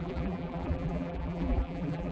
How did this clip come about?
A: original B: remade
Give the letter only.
B